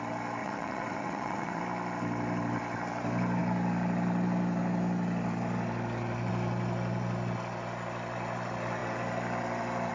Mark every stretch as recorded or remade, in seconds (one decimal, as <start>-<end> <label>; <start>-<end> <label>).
0.0-0.4 recorded; 0.4-1.6 remade; 1.6-9.9 recorded